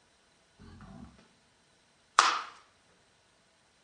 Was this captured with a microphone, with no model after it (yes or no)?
no